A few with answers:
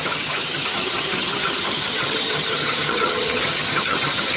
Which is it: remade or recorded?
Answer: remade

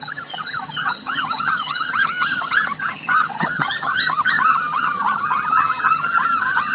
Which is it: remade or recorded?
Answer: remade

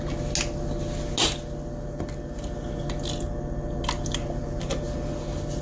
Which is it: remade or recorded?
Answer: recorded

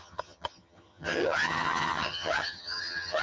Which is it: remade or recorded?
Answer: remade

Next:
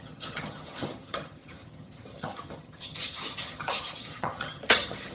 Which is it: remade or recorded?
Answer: remade